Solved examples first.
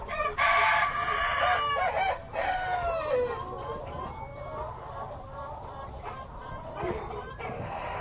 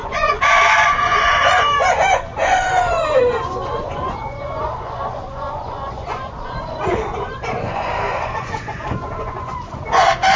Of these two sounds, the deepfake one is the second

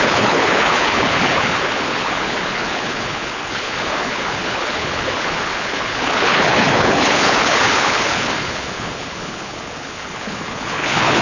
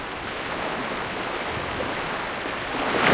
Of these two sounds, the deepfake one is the first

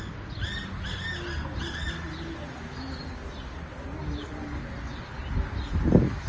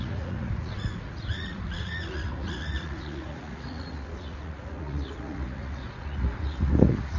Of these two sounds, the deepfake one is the second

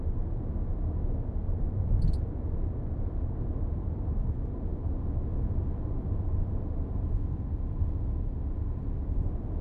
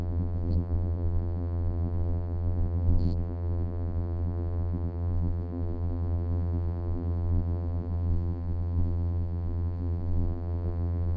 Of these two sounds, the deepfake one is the second